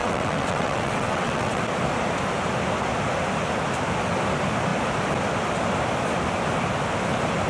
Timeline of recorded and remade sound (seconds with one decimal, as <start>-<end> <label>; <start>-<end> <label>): 0.0-1.6 remade; 1.6-7.5 recorded